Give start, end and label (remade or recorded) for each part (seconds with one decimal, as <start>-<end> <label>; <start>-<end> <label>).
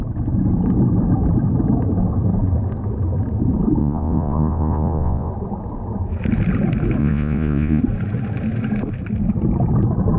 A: 0.0-3.8 recorded; 3.8-5.3 remade; 5.3-7.0 recorded; 7.0-7.8 remade; 7.8-10.2 recorded